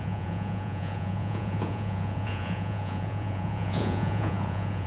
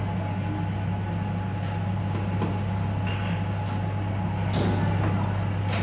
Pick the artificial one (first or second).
first